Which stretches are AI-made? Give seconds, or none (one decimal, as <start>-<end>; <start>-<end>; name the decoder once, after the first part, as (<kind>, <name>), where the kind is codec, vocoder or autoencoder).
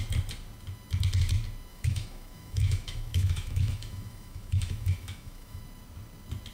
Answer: 1.7-5.6 (autoencoder, DAC-VAE)